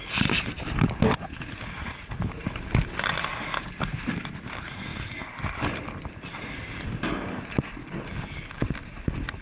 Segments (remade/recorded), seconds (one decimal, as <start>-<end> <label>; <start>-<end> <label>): 0.0-9.4 recorded